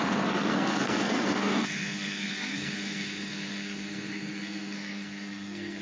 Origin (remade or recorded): remade